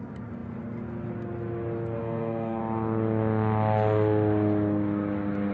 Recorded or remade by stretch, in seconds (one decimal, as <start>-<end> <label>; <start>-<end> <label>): 0.0-2.0 recorded; 2.0-2.6 remade; 2.6-5.5 recorded